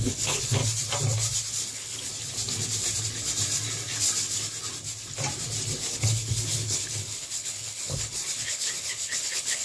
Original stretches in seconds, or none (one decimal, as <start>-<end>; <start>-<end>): 0.6-1.7; 2.1-5.9